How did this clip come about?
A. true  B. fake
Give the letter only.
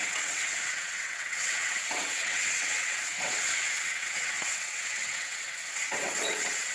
B